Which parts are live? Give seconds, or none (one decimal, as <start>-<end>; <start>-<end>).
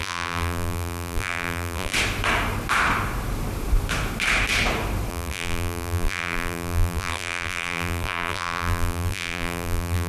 1.9-5.1